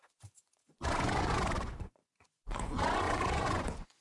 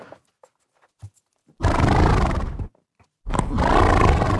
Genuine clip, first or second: second